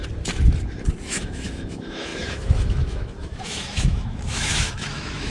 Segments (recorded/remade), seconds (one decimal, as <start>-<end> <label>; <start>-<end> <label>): 0.0-1.0 recorded; 1.0-5.3 remade